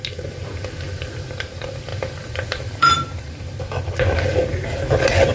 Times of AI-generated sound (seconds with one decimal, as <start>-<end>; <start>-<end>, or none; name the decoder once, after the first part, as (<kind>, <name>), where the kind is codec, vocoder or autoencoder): 1.9-3.6 (vocoder, BigVGAN v2)